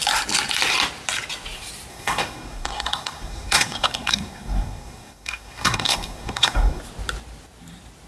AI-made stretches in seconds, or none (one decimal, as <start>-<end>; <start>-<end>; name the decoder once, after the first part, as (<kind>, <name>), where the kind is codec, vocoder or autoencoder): 1.9-6.8 (codec, SNAC)